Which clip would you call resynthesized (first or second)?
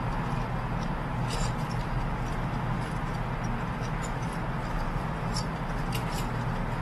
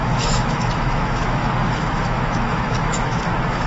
second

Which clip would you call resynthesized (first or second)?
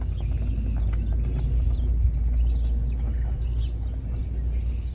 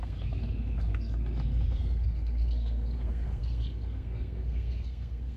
second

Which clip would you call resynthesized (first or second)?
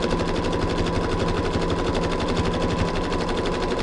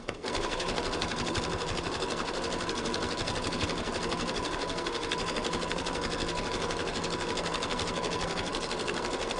second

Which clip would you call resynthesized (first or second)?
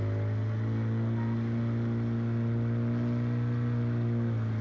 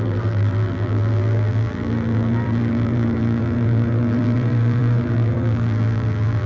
second